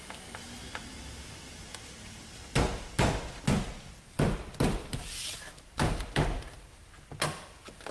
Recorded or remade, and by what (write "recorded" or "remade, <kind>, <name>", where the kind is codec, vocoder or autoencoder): recorded